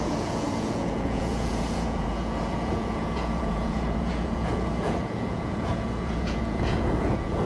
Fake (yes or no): yes